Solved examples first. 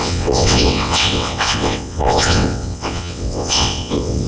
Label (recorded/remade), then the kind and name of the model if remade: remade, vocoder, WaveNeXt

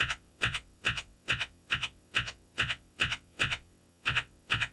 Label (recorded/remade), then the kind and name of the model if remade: remade, vocoder, WaveNeXt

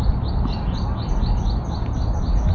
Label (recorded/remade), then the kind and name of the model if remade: recorded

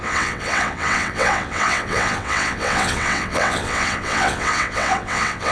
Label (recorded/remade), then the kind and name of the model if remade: remade, vocoder, WaveNeXt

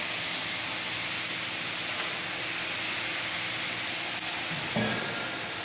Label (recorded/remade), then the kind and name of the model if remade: recorded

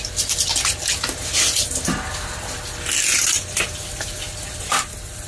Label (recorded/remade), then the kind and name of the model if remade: recorded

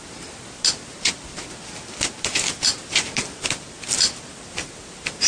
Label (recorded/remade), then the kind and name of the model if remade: recorded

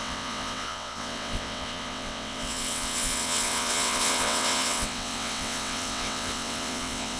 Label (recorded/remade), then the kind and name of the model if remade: remade, vocoder, WaveNeXt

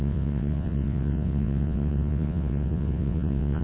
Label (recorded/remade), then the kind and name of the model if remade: remade, vocoder, WaveNeXt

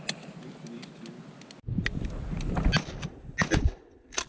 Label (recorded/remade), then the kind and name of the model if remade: recorded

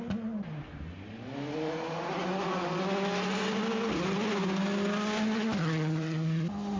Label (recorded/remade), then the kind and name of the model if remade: recorded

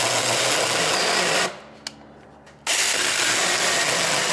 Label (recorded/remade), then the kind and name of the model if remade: recorded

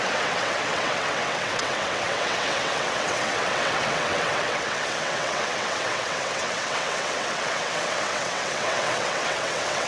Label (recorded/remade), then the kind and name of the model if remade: remade, vocoder, WaveNeXt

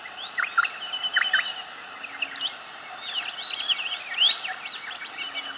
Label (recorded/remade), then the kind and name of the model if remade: recorded